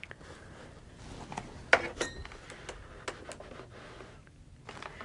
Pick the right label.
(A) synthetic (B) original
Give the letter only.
B